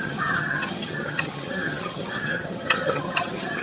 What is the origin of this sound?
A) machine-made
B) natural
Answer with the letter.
A